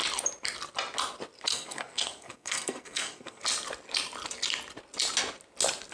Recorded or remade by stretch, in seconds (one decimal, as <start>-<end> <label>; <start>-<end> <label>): 0.0-1.5 recorded; 1.5-3.4 remade; 3.4-5.9 recorded